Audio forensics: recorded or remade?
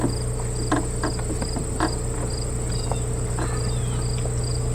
recorded